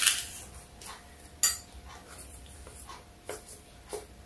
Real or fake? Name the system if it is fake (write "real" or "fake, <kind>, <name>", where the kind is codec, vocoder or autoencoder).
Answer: real